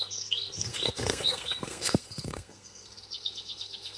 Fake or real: fake